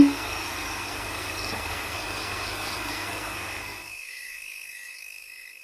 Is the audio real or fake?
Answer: fake